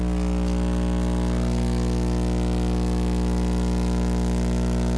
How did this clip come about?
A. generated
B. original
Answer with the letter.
B